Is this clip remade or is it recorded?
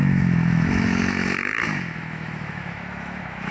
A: remade